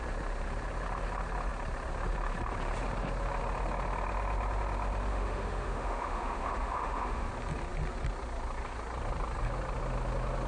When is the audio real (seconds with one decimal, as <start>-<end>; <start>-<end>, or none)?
0.0-5.1; 7.3-10.5